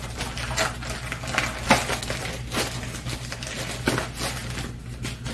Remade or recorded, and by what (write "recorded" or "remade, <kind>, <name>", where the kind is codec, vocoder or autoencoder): recorded